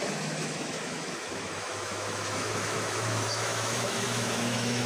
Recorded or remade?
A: remade